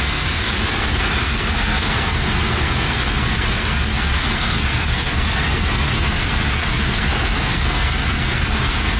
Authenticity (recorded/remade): remade